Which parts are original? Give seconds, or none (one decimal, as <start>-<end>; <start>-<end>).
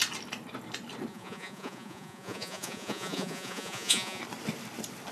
0.0-1.1; 4.2-5.1